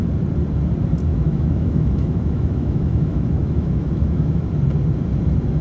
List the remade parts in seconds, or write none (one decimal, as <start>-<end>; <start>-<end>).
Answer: 1.1-4.5